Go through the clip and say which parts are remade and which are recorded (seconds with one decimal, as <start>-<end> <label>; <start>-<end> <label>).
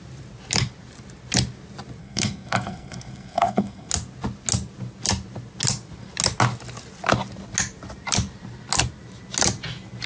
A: 0.0-2.0 recorded; 2.0-3.9 remade; 3.9-10.1 recorded